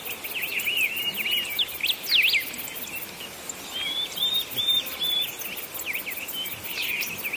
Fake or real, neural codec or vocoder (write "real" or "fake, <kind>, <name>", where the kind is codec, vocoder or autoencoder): real